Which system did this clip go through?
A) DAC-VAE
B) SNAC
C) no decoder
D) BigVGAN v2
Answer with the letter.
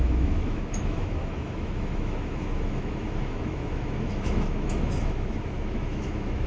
A